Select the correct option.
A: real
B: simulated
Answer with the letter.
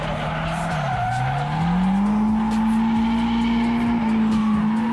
A